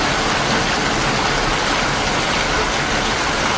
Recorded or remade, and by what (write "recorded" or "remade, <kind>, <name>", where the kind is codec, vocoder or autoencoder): recorded